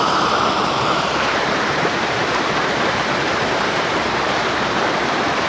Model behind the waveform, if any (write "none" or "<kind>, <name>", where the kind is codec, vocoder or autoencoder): vocoder, BigVGAN v2